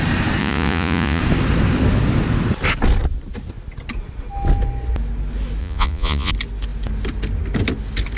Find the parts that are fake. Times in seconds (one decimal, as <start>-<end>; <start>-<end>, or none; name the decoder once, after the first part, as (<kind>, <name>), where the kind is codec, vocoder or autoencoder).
0.4-1.2 (vocoder, Vocos); 5.6-6.3